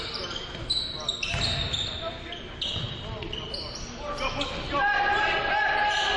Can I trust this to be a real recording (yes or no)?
yes